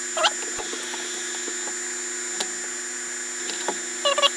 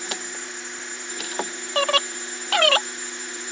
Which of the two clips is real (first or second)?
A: first